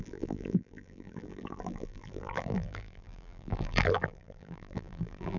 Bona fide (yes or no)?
no